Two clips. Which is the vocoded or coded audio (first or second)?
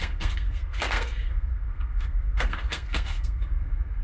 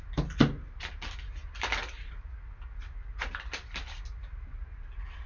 first